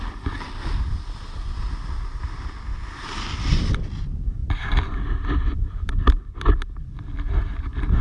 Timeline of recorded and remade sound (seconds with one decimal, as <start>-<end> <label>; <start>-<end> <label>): 0.0-2.7 recorded; 2.7-3.5 remade; 3.5-4.4 recorded; 4.4-8.0 remade